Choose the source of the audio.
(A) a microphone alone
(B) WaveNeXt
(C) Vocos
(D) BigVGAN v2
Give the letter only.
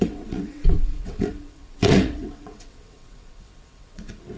B